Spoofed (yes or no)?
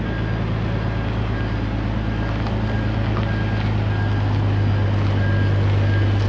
no